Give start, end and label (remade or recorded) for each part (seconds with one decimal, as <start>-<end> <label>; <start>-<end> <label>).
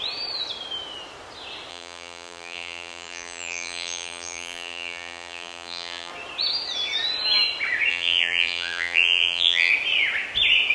0.0-1.7 recorded; 1.7-6.1 remade; 6.1-7.9 recorded; 7.9-9.7 remade; 9.7-10.7 recorded